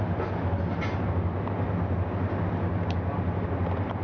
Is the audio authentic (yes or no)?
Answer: yes